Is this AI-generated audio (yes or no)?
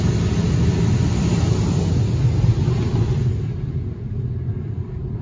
no